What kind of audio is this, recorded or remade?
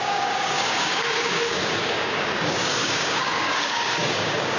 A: remade